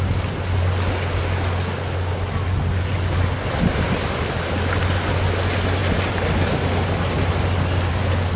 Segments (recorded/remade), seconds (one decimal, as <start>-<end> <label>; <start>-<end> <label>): 0.0-8.4 recorded